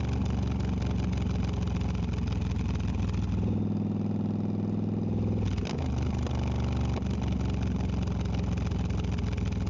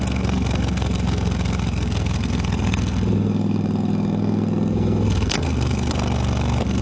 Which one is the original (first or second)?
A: first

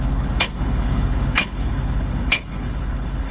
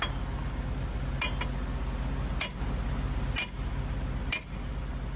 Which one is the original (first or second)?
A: second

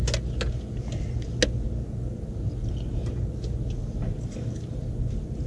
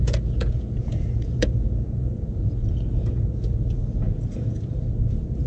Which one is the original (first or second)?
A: first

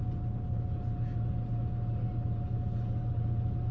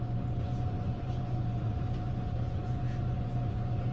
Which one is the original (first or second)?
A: first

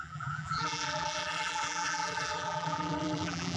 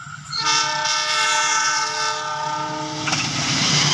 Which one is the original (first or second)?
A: second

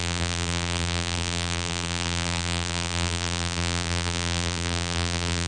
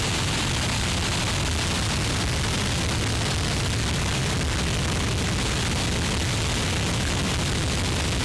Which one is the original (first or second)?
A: second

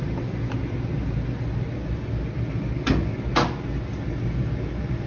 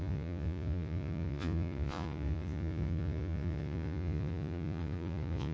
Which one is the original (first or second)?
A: first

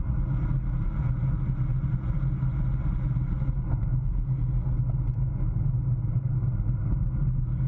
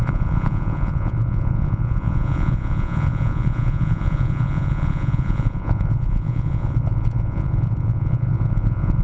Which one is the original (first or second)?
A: first